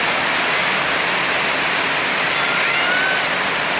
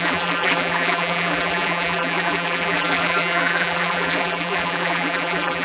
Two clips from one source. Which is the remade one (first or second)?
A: second